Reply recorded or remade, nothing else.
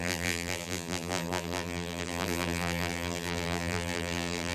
remade